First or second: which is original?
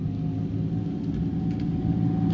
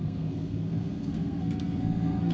first